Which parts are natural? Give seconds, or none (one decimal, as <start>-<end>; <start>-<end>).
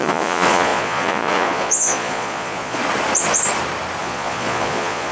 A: 2.8-4.0